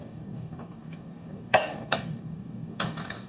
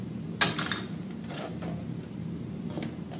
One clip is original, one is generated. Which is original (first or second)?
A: second